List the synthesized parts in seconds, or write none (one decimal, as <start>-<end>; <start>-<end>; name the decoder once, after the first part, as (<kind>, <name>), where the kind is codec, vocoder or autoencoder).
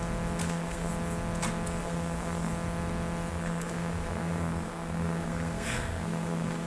0.4-0.9 (codec, SNAC); 1.8-2.5; 3.3-6.7